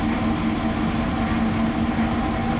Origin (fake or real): real